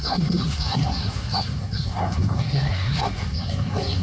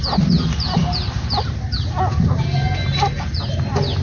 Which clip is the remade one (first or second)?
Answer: first